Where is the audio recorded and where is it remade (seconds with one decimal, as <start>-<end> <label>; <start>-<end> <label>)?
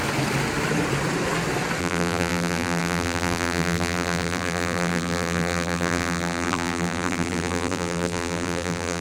0.0-1.8 recorded; 1.8-9.0 remade